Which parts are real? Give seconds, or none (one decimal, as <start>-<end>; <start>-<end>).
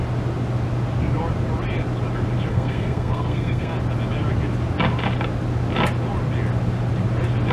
0.0-2.5; 3.7-7.5